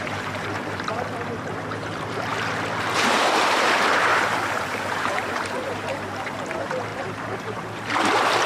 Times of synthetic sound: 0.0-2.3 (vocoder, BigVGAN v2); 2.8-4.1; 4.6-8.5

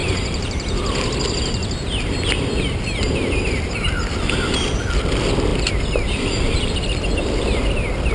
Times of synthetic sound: 0.0-4.0 (vocoder, BigVGAN v2); 4.8-8.1

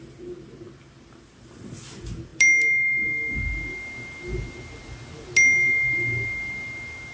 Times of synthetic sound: none

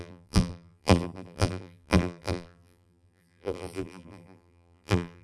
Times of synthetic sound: 0.0-5.2 (vocoder, BigVGAN v2)

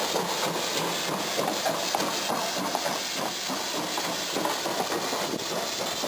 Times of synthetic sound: none

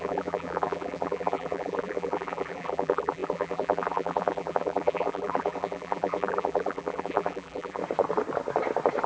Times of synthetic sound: 0.0-7.8 (vocoder, BigVGAN v2)